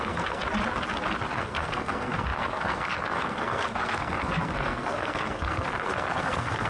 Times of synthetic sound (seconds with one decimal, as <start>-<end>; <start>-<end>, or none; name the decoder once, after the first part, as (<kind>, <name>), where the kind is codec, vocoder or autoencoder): 0.0-0.4 (codec, SNAC); 1.3-6.7